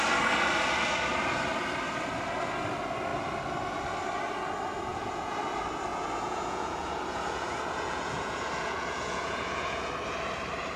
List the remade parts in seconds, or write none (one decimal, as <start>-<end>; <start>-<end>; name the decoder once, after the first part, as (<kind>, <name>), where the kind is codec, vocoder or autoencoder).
4.9-5.4 (vocoder, Vocos); 5.9-9.9